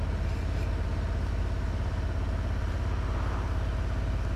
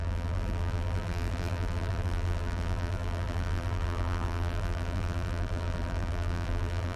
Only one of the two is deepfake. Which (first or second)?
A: second